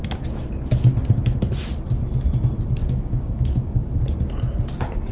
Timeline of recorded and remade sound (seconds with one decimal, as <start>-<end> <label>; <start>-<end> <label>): 0.0-2.8 recorded; 2.8-3.8 remade; 3.8-5.1 recorded